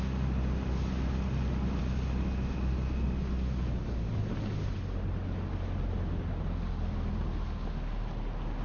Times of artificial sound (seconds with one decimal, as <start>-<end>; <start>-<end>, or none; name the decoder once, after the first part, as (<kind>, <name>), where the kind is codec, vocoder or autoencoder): none